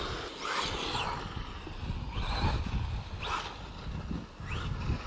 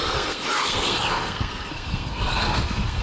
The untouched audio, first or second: first